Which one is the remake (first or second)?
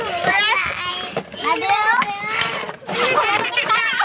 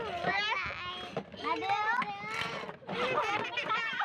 first